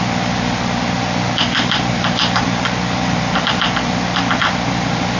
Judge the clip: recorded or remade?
recorded